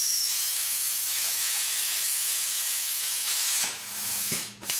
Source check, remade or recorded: remade